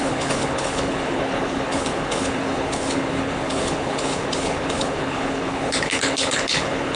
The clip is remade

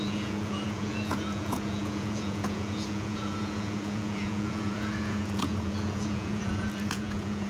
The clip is remade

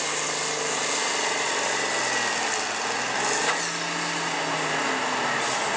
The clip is recorded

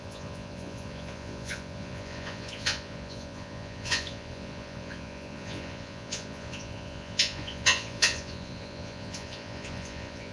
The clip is remade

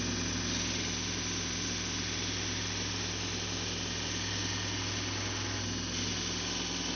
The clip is recorded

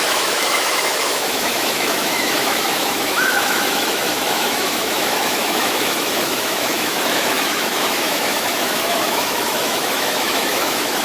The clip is remade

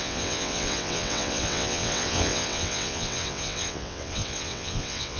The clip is remade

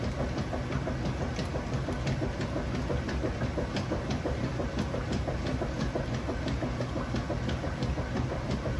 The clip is recorded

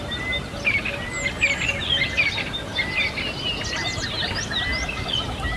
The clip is recorded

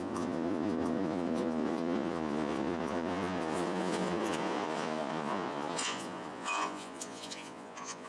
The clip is remade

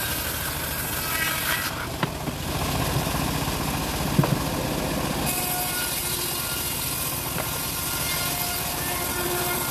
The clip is recorded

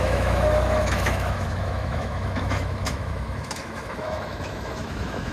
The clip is remade